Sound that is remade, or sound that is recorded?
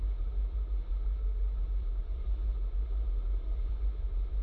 remade